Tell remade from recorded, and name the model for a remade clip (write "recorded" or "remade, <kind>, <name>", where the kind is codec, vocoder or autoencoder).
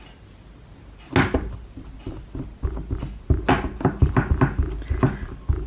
recorded